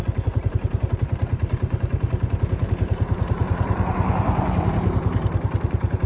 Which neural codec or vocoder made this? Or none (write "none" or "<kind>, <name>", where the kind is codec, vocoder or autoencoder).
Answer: vocoder, BigVGAN v2